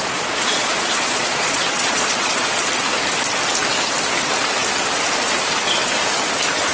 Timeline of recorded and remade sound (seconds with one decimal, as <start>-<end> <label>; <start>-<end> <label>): 0.0-2.7 remade; 2.7-6.7 recorded